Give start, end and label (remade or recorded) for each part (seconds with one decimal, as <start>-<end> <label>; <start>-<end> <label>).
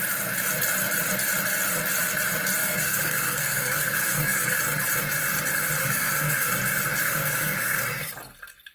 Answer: 0.0-2.6 recorded; 2.6-4.6 remade; 4.6-5.8 recorded; 5.8-6.5 remade; 6.5-7.0 recorded; 7.0-7.8 remade; 7.8-8.7 recorded